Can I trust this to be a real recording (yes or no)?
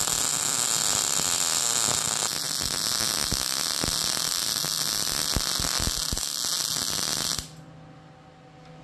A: yes